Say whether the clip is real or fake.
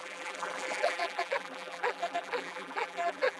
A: fake